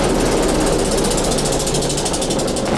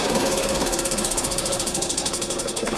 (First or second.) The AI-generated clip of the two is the second